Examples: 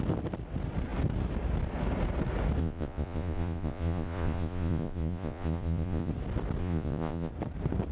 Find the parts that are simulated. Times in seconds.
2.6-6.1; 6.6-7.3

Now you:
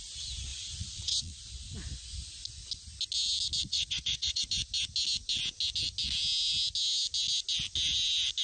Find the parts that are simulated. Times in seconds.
0.5-1.5; 3.7-4.4

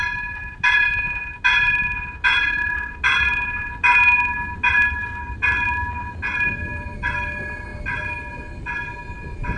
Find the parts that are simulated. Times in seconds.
none

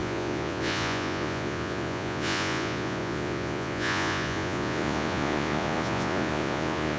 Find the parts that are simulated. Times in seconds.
0.0-7.0

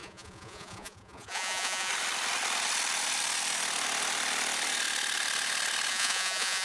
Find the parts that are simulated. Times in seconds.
0.0-1.9; 5.9-6.6

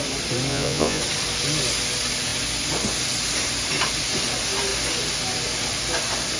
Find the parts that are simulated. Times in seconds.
0.5-1.0

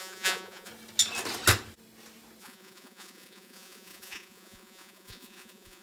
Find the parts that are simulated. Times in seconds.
0.0-0.7; 2.4-5.8

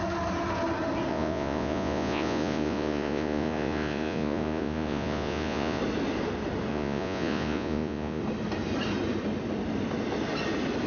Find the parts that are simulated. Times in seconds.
1.1-5.8; 6.7-8.2